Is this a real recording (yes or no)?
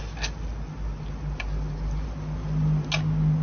yes